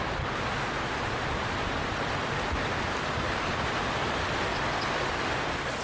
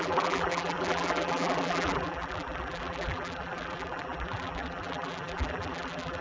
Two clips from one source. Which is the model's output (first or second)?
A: second